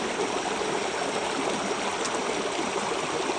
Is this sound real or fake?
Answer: real